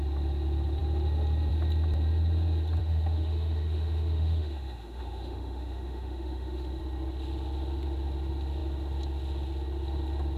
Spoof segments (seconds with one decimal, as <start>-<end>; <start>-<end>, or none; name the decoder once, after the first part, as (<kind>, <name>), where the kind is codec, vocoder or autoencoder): 2.8-6.8 (autoencoder, DAC-VAE)